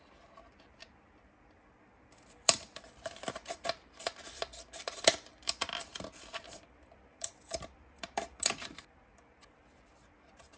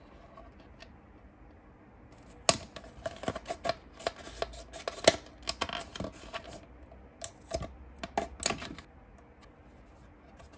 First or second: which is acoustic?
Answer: second